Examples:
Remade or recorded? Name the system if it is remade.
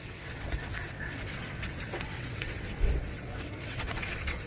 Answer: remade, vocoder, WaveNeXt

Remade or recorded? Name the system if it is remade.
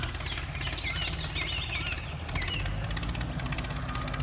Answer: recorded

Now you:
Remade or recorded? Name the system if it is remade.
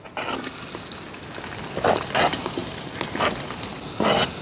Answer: recorded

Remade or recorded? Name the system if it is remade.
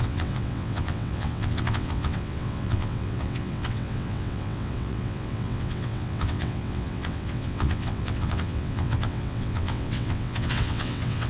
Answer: remade, vocoder, WaveNeXt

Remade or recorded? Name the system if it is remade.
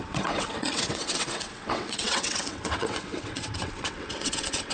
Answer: remade, vocoder, WaveNeXt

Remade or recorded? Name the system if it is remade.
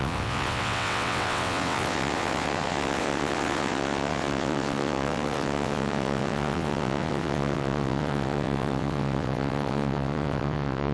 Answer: remade, vocoder, WaveNeXt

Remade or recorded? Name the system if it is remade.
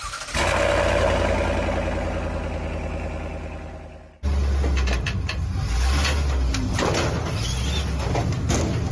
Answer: recorded